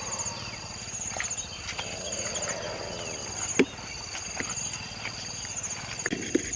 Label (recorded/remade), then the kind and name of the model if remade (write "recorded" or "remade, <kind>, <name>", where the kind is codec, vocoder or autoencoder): recorded